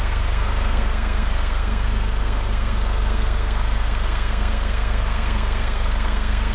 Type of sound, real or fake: fake